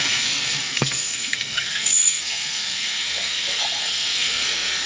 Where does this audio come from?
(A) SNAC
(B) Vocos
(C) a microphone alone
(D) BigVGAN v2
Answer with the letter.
A